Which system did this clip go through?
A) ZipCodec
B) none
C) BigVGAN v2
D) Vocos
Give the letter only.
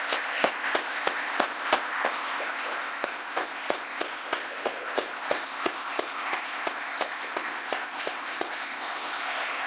A